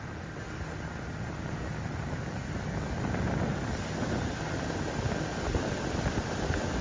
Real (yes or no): yes